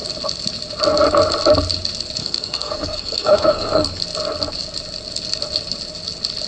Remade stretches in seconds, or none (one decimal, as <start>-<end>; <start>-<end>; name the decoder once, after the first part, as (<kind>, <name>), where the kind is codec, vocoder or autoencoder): 2.2-4.0 (codec, SNAC)